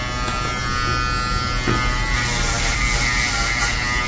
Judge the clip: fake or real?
real